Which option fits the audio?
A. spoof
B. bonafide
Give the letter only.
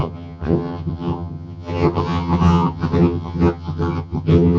A